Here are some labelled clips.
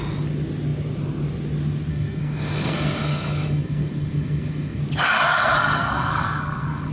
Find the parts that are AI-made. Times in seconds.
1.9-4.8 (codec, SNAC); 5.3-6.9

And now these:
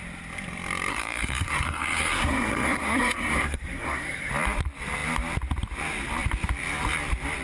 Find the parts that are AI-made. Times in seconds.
0.9-4.3 (codec, SNAC)